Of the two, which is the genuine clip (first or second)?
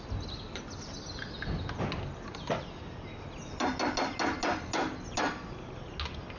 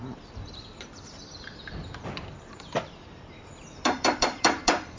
first